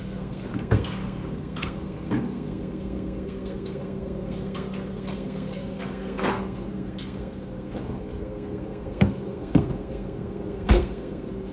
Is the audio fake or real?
fake